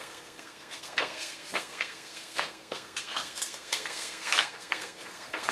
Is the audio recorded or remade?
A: remade